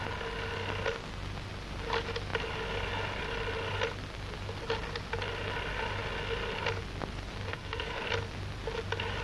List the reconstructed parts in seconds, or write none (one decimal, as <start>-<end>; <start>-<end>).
7.5-8.0